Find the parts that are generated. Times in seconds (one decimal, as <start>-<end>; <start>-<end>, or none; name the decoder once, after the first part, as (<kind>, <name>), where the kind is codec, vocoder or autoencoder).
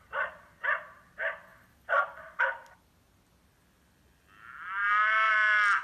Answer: none